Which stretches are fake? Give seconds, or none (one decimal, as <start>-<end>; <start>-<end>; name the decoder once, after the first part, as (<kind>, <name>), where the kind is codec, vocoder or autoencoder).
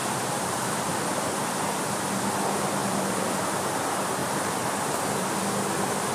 0.0-0.8 (vocoder, BigVGAN v2); 2.8-3.4; 4.2-6.1